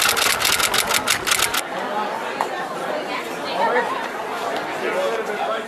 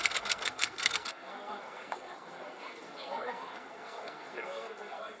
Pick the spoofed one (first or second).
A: second